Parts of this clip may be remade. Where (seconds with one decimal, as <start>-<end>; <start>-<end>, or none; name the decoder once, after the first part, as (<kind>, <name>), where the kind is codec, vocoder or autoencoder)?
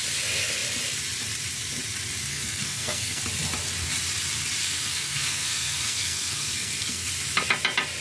2.3-3.2 (codec, SNAC); 4.6-7.1